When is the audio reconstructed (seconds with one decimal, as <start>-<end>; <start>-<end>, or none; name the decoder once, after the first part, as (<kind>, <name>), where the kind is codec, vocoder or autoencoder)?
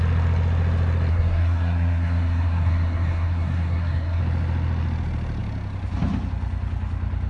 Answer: 1.1-4.2 (codec, SNAC)